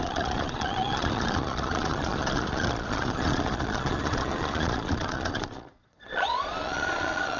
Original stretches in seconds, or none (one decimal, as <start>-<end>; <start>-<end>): none